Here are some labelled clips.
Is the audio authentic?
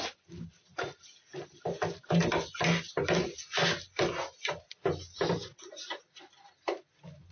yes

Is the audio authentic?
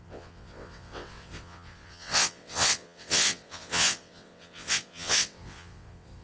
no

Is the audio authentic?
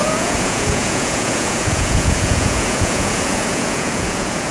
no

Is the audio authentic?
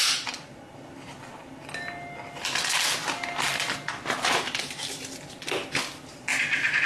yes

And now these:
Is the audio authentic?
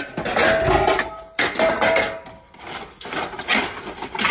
yes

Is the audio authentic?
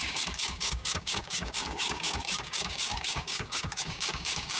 no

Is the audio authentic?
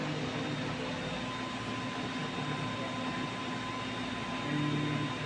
yes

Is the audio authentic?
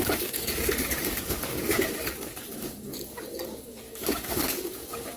no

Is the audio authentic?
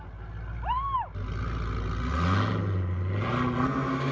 yes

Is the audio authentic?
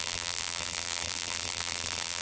no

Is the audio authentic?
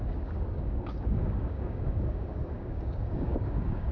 no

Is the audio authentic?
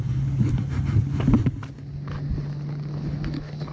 yes